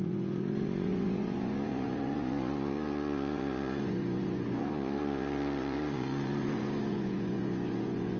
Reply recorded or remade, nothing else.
remade